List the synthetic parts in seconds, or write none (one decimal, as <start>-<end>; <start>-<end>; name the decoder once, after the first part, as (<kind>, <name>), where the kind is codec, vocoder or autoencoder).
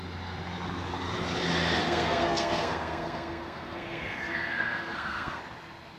1.8-5.4 (codec, SNAC)